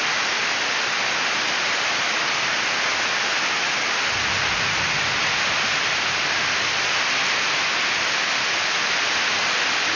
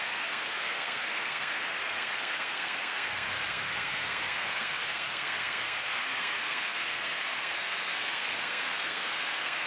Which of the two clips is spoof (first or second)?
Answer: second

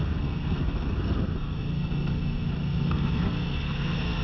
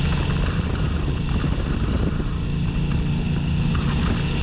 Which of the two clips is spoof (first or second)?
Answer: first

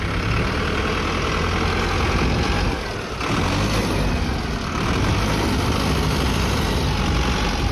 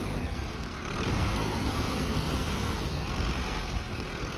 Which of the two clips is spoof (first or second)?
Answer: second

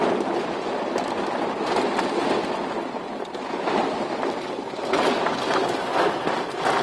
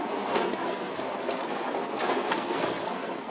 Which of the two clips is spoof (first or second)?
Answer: second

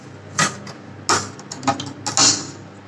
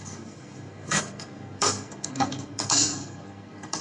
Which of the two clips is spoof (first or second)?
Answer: second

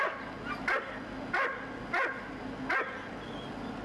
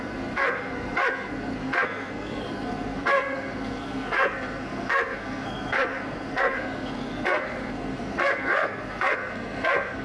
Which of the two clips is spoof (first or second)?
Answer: second